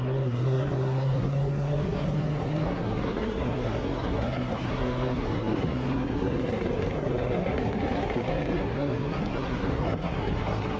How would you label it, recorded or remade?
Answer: remade